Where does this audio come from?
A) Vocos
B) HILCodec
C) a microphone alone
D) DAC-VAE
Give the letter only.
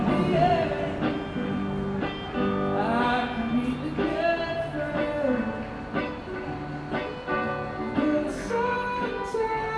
C